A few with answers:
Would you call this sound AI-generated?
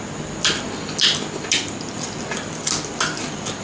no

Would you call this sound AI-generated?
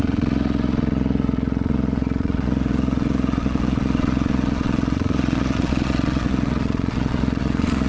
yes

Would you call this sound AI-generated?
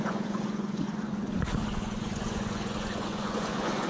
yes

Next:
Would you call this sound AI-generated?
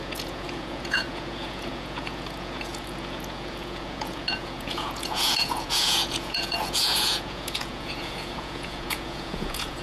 yes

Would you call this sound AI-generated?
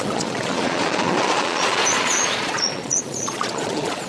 yes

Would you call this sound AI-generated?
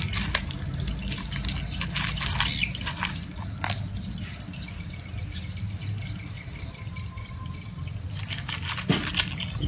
no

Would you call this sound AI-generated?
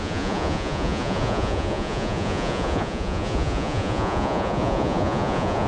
yes